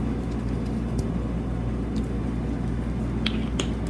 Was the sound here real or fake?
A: real